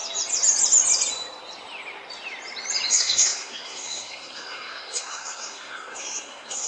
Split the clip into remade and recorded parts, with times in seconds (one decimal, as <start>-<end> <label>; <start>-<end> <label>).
0.0-2.9 recorded; 2.9-6.7 remade